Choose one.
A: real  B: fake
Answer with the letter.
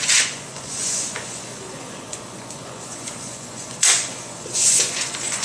B